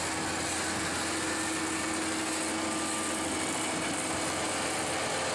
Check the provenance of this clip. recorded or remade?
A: recorded